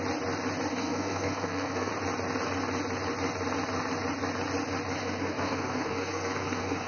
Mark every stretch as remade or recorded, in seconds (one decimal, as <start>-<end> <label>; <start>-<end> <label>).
0.0-0.7 recorded; 0.7-1.9 remade; 1.9-5.0 recorded; 5.0-6.9 remade